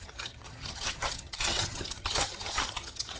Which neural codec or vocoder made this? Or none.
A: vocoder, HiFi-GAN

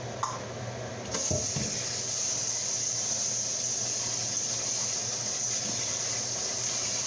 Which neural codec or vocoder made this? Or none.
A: none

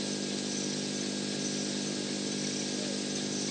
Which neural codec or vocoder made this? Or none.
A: none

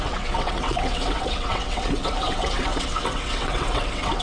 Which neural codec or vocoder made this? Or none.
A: vocoder, WaveNeXt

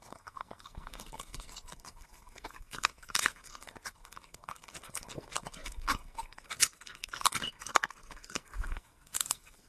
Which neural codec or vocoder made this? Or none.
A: codec, SNAC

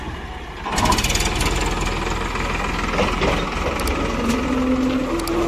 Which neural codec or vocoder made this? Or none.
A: none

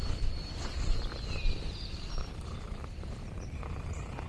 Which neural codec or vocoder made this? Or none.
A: none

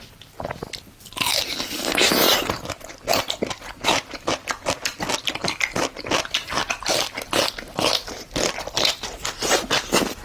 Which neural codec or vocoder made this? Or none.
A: none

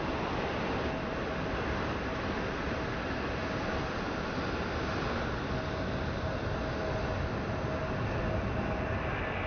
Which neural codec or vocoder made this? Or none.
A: none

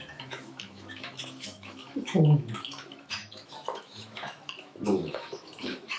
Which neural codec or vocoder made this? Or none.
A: autoencoder, DAC-VAE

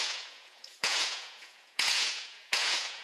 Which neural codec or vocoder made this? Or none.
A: vocoder, Vocos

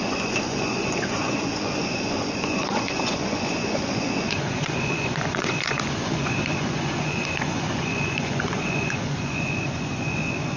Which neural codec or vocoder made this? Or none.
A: vocoder, Vocos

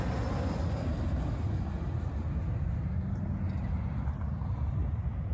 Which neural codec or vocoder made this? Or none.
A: none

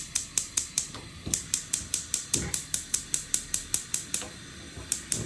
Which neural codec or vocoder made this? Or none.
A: none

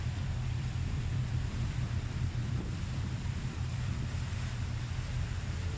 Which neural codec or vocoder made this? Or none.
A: vocoder, BigVGAN v2